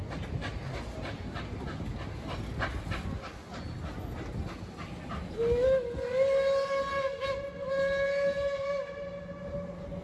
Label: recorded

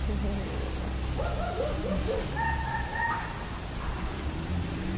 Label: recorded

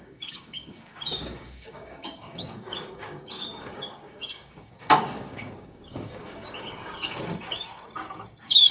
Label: remade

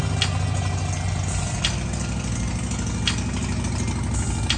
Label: recorded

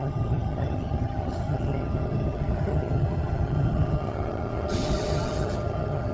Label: remade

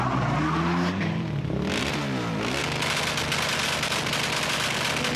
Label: recorded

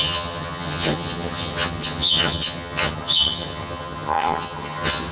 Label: remade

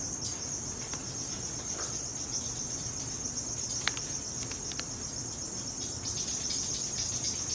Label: recorded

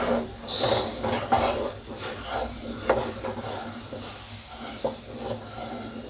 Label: recorded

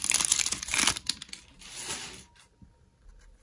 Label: recorded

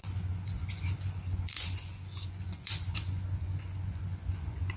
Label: remade